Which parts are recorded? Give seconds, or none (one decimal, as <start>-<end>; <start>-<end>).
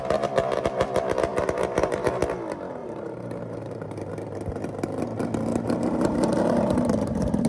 0.0-1.3; 2.2-2.8; 4.1-5.5